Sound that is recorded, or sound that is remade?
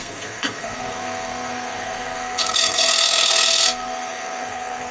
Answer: remade